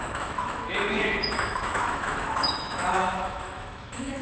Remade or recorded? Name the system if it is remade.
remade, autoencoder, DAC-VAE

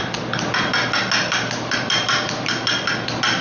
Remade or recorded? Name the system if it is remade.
recorded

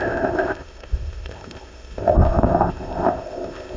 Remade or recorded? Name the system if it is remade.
remade, codec, ZipCodec